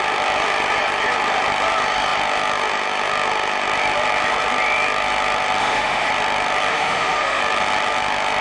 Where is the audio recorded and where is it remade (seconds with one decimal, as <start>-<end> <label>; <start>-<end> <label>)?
0.0-5.6 recorded; 5.6-6.1 remade; 6.1-6.7 recorded; 6.7-7.4 remade; 7.4-8.4 recorded